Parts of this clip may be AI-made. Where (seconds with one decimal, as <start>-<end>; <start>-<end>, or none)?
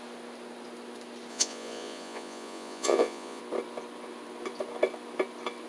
1.3-3.4